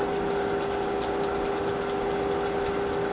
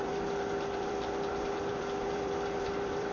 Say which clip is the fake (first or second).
second